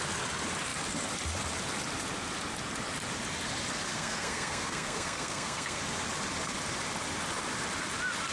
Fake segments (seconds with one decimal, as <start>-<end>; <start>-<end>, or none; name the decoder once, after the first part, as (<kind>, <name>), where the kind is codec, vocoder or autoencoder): 3.9-5.8 (codec, SNAC)